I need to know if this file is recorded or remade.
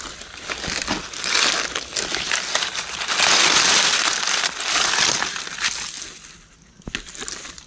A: recorded